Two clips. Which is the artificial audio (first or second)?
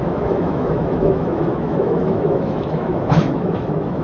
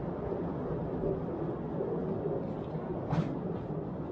first